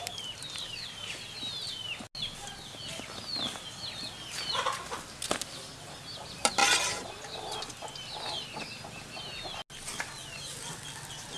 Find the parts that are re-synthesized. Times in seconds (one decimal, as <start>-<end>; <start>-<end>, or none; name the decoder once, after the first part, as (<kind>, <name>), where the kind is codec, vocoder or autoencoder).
none